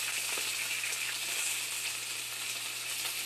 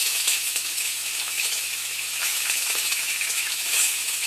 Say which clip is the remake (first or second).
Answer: second